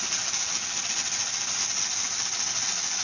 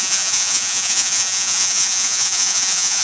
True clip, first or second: first